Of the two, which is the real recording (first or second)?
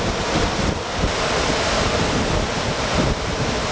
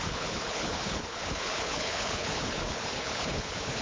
first